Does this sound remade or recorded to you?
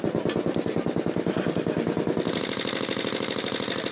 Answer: recorded